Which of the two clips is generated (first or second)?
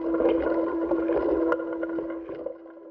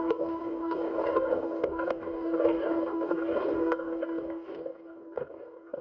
second